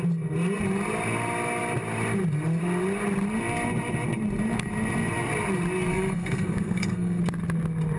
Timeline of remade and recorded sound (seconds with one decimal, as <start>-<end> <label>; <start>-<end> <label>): 0.0-5.9 recorded; 5.9-7.2 remade; 7.2-8.0 recorded